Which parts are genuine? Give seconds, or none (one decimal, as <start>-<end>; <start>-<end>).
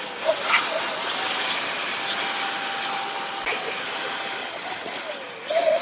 0.0-4.4; 4.9-5.8